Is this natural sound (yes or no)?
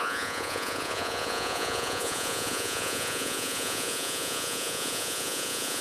no